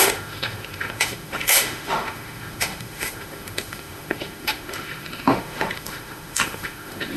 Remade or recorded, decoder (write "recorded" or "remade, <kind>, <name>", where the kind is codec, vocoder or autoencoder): remade, autoencoder, DAC-VAE